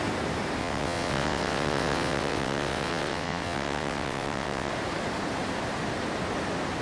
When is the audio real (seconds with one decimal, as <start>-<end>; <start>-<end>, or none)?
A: 0.0-0.6; 4.7-6.8

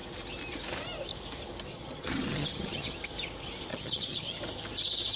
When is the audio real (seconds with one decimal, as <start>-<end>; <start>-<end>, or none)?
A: 0.0-1.7; 2.9-3.7; 4.4-5.2

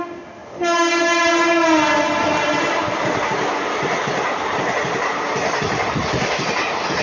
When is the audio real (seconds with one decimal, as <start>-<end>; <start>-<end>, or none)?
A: 0.0-7.0

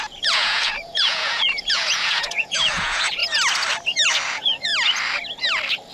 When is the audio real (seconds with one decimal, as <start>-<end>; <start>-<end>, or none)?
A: 3.2-4.3; 4.7-5.9

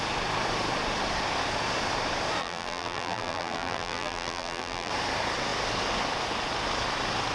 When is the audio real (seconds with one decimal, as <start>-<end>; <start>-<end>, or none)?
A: 0.0-2.4; 4.9-7.3